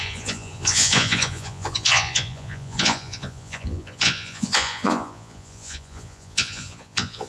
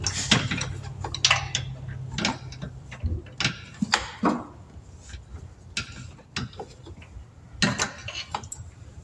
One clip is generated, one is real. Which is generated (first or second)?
first